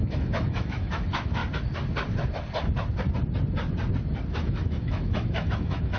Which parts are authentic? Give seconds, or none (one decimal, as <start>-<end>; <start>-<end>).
1.4-4.3